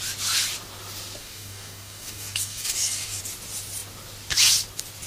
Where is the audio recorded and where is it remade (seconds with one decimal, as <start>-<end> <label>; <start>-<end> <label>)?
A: 0.0-1.2 recorded; 1.2-3.2 remade; 3.2-5.1 recorded